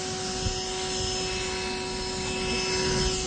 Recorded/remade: recorded